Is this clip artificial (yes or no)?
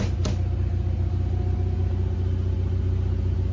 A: no